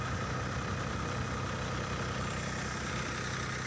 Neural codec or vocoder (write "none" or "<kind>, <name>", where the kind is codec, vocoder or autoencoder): none